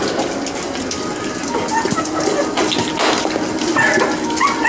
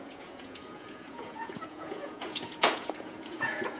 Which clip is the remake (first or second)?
second